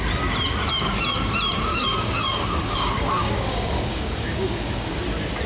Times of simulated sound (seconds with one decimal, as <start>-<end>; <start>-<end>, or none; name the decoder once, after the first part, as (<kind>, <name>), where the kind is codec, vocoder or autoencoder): 1.7-5.0 (codec, DAC)